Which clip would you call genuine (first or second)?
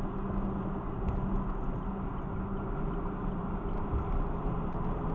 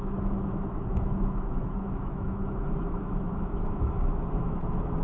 first